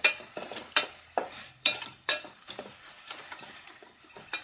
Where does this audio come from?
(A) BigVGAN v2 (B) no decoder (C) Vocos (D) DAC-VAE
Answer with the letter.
A